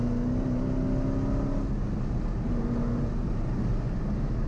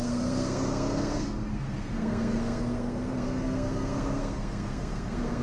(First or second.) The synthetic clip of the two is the second